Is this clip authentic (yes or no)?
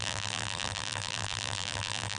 no